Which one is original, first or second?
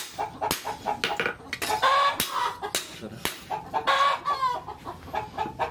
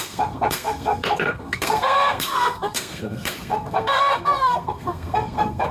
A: first